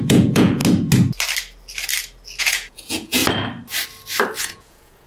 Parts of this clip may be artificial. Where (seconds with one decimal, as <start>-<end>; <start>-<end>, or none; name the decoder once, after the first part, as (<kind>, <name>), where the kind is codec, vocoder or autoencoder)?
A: 0.0-0.6 (vocoder, Vocos); 2.4-3.2; 4.4-5.1